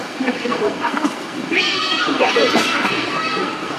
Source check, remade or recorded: remade